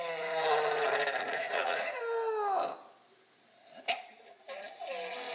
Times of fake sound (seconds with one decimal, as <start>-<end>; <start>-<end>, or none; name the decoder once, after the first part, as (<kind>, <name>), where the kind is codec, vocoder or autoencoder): 1.2-2.0 (vocoder, Vocos)